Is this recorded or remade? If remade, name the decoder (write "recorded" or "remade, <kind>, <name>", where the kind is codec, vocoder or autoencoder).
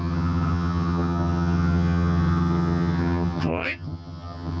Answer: remade, vocoder, HiFi-GAN